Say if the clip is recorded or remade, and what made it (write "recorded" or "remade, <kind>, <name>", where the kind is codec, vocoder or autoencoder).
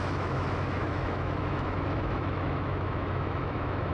remade, autoencoder, DAC-VAE